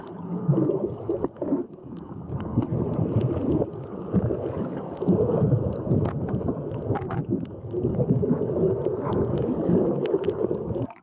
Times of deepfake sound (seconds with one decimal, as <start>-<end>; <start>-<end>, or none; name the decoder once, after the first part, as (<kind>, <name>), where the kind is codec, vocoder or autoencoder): 0.0-2.7 (codec, DAC); 3.7-11.0